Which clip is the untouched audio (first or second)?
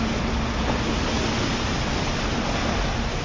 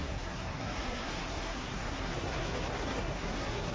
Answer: first